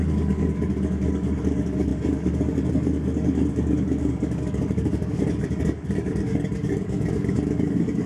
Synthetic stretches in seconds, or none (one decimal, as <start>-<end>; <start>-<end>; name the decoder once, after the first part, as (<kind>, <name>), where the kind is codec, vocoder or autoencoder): 0.0-8.1 (codec, DAC)